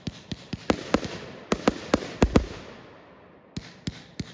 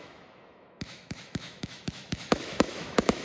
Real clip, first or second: first